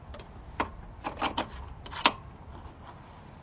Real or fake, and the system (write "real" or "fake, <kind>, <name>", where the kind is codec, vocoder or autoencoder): real